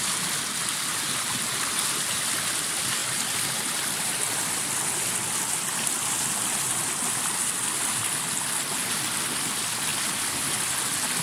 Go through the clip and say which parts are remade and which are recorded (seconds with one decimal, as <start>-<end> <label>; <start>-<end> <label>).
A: 0.0-3.0 recorded; 3.0-4.3 remade; 4.3-11.2 recorded